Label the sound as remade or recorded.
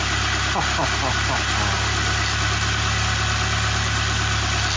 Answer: recorded